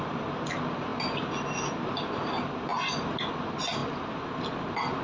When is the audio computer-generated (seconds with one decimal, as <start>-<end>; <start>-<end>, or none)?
none